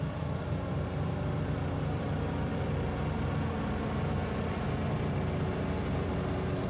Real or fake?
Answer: real